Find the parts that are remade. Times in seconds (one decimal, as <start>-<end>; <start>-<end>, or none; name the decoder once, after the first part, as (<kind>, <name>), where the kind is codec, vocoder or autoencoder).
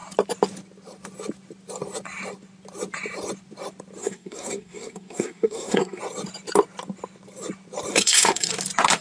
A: 4.0-6.0 (codec, SNAC); 7.9-8.5